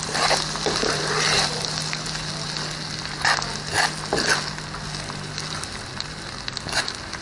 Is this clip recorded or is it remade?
recorded